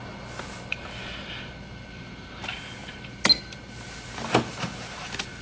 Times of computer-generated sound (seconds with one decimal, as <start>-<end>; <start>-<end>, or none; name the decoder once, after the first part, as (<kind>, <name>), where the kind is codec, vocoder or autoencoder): none